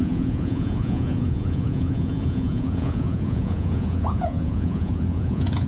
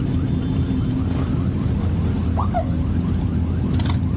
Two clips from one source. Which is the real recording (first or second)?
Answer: second